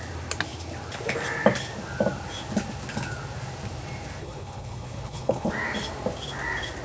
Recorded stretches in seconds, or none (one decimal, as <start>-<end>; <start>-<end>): 0.0-4.2; 5.5-6.8